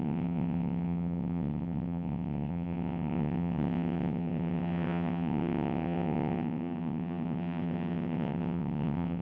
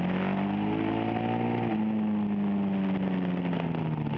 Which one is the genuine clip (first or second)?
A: second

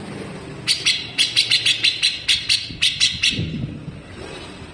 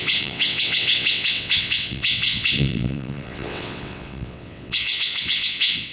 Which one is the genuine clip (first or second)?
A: first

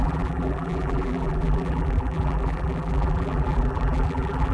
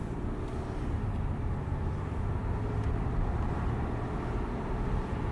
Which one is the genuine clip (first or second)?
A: second